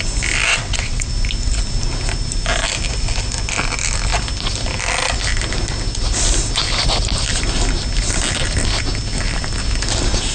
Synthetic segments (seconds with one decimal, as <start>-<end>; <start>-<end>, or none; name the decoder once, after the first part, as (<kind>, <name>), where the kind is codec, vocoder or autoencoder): 0.5-1.1 (vocoder, WaveNeXt)